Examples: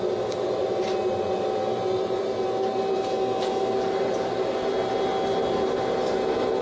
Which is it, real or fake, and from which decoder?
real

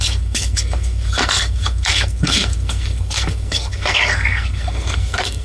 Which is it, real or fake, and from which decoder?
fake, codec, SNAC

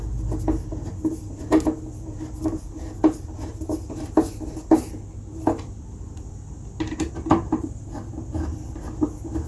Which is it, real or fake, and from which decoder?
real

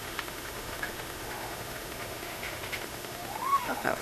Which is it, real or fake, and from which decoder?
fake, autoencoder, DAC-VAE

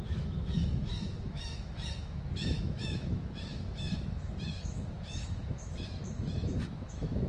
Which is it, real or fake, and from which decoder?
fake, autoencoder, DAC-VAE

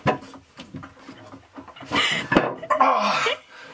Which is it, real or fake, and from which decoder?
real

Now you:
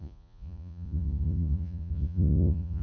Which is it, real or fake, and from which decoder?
fake, vocoder, Vocos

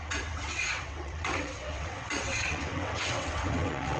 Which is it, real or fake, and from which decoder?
fake, vocoder, WaveNeXt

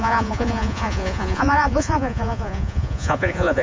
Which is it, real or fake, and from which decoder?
fake, vocoder, Vocos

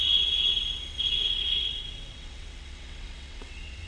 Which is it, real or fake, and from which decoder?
fake, vocoder, WaveNeXt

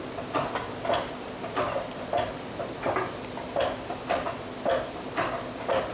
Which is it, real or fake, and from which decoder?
fake, vocoder, BigVGAN v2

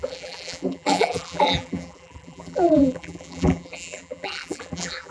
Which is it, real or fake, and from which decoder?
fake, vocoder, BigVGAN v2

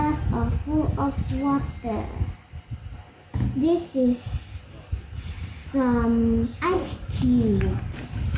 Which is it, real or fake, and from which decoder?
real